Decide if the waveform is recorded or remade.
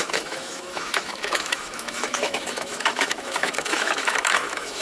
remade